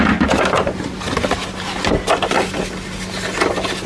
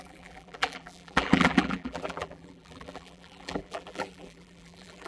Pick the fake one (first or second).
second